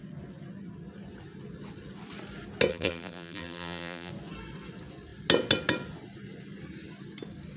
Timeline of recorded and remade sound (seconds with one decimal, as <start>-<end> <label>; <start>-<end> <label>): 0.0-2.7 recorded; 2.7-4.1 remade; 4.1-7.6 recorded